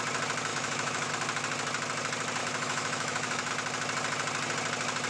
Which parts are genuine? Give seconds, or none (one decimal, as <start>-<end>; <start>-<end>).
0.0-0.5; 1.1-2.4; 3.5-5.1